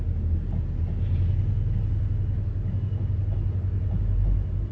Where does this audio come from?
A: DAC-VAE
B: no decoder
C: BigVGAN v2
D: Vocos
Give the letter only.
B